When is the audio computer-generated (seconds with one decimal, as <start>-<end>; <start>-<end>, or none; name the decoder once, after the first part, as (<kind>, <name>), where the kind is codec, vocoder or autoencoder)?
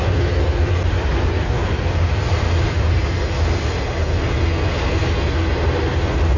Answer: none